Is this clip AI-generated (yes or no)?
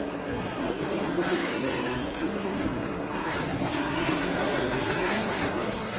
yes